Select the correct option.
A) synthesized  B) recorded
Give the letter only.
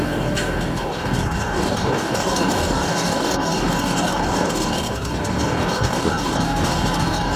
A